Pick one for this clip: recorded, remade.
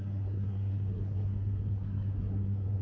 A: remade